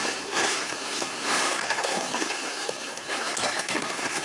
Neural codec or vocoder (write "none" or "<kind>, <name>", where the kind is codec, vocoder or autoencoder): codec, SNAC